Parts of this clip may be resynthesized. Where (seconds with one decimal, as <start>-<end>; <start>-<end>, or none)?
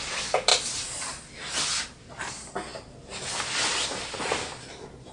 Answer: none